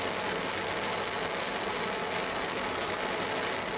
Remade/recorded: recorded